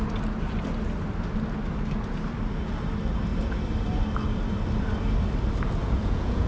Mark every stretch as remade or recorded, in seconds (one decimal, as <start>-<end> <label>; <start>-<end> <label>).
0.0-5.8 recorded; 5.8-6.5 remade